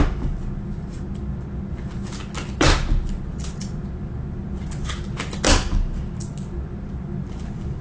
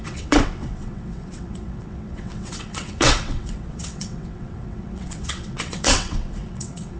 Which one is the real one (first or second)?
first